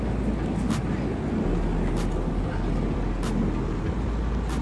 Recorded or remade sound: recorded